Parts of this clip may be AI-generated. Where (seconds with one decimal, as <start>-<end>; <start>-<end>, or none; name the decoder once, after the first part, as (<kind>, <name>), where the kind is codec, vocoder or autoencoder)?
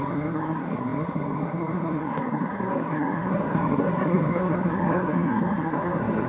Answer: 0.0-6.3 (codec, SNAC)